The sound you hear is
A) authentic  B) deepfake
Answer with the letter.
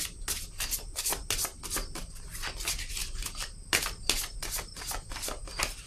A